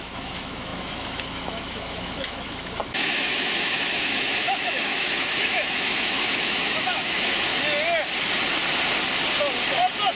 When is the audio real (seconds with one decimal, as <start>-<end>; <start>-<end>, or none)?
7.5-10.1